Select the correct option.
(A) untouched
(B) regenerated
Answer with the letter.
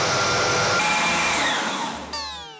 A